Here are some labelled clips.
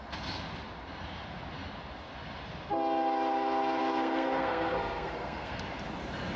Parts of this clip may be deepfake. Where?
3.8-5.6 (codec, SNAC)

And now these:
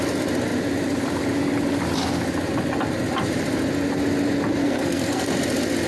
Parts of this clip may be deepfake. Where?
4.6-5.3 (codec, SNAC)